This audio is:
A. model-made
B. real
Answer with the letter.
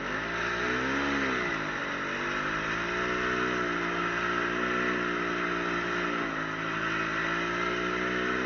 B